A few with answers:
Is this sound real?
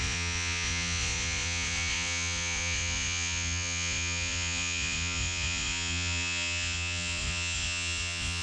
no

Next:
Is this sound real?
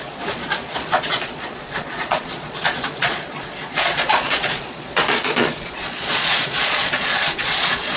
no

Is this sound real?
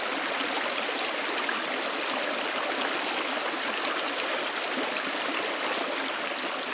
yes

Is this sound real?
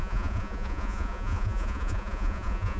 no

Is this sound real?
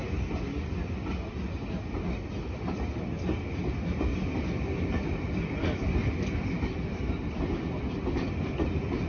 yes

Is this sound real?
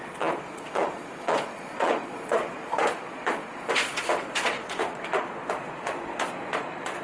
no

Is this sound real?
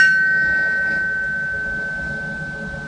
yes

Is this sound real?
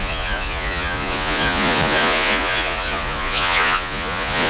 no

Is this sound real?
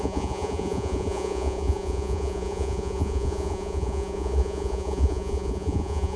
no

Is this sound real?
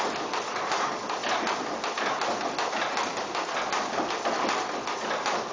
yes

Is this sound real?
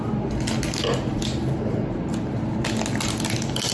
yes